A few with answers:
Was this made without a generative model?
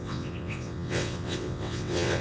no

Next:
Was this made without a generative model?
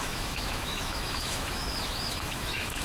no